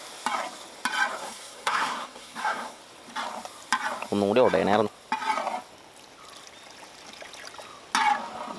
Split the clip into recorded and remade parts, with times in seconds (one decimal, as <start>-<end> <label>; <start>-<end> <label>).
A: 0.0-1.2 recorded; 1.2-2.8 remade; 2.8-8.6 recorded